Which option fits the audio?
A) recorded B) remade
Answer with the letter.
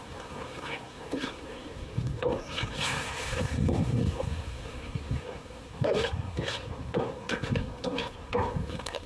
B